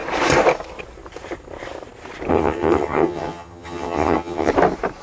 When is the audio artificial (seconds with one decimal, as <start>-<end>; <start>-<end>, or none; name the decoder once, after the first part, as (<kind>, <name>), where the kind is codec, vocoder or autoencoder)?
2.3-4.5 (vocoder, HiFi-GAN)